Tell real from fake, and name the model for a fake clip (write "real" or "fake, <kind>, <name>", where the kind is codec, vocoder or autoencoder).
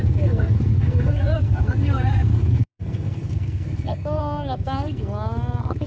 fake, codec, SNAC